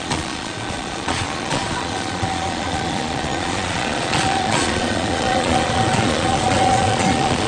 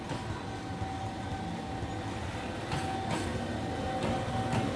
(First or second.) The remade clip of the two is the first